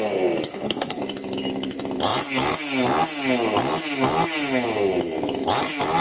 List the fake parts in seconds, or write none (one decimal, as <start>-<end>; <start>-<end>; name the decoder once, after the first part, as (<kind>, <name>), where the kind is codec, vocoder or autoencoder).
0.5-1.0 (codec, SNAC)